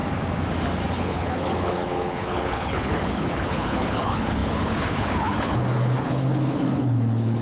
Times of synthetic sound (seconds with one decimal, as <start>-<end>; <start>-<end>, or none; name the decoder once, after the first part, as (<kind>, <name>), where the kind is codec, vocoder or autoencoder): 1.0-7.4 (codec, HILCodec)